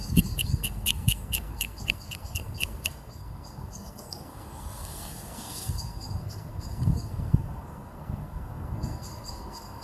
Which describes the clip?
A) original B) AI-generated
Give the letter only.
B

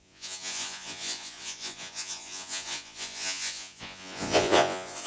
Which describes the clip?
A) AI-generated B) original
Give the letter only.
A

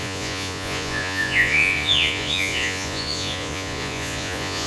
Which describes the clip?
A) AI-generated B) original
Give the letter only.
A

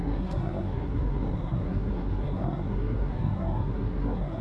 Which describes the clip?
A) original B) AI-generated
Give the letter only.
B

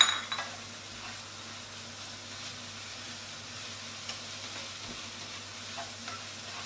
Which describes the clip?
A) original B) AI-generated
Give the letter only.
A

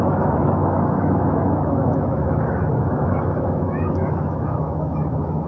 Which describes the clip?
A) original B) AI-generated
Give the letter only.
B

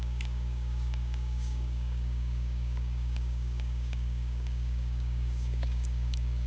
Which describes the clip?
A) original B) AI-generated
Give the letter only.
B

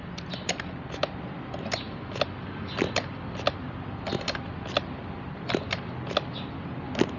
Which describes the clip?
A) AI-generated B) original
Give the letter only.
B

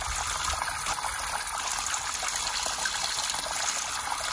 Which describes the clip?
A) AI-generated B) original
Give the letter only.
B